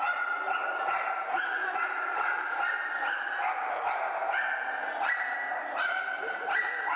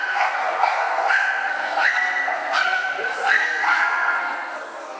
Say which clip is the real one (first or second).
first